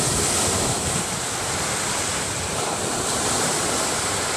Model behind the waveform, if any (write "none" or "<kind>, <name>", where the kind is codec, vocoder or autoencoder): vocoder, BigVGAN v2